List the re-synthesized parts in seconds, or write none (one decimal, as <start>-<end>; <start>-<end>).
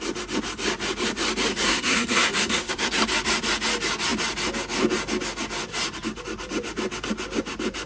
1.5-3.0